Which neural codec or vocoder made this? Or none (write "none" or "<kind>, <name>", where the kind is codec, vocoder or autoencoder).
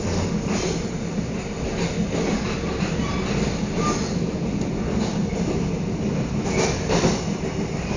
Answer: none